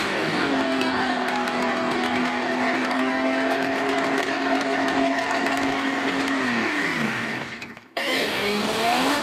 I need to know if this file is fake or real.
fake